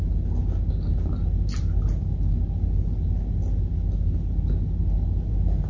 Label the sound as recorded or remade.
recorded